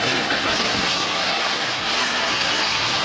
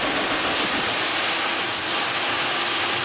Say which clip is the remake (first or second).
first